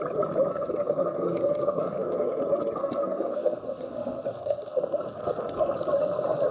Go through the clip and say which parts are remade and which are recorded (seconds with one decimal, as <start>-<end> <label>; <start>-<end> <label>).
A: 0.0-0.5 recorded; 0.5-2.4 remade; 2.4-2.8 recorded; 2.8-5.7 remade; 5.7-6.5 recorded